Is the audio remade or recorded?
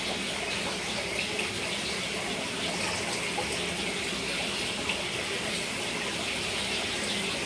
recorded